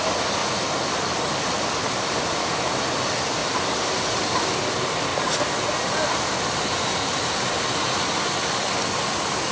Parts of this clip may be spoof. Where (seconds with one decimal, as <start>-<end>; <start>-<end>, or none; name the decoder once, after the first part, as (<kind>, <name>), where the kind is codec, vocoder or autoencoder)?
0.0-0.4 (vocoder, BigVGAN v2); 0.9-5.1; 8.8-9.5